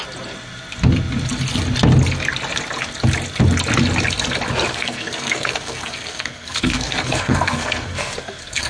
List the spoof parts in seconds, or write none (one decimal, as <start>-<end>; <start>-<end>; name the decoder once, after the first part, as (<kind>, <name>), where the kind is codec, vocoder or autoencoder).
4.7-8.7 (codec, SNAC)